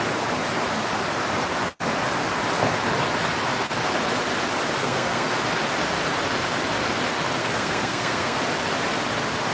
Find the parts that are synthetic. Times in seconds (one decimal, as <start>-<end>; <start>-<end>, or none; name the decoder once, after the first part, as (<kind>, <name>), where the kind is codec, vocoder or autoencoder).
4.8-5.3 (codec, SNAC); 7.4-8.4